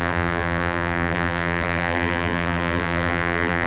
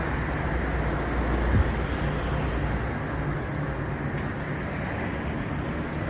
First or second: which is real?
second